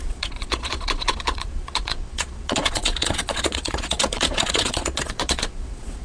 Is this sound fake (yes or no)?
yes